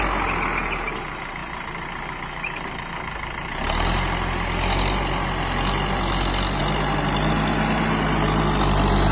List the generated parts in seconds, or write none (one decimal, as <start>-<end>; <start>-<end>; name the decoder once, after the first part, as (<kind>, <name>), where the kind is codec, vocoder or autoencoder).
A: none